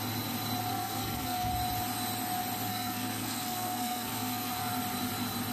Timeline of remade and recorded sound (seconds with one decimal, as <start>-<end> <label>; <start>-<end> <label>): 0.0-0.7 recorded; 0.7-1.5 remade; 1.5-2.7 recorded; 2.7-4.7 remade; 4.7-5.5 recorded